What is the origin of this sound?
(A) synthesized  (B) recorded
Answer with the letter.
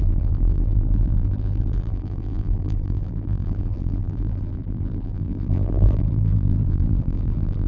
A